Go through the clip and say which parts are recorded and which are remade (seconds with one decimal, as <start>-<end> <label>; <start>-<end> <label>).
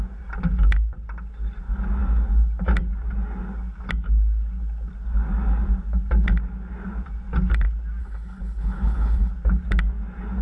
0.0-8.0 recorded; 8.0-9.3 remade; 9.3-10.4 recorded